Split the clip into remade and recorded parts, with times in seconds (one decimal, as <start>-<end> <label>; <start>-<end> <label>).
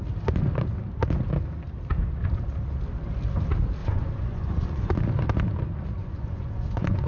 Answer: 0.0-3.8 recorded; 3.8-4.9 remade; 4.9-6.0 recorded; 6.0-7.1 remade